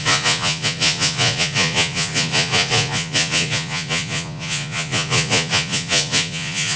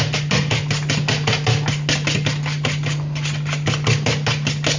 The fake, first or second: first